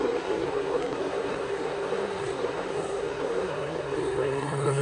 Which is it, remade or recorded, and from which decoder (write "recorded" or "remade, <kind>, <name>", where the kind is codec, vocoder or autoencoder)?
remade, codec, SNAC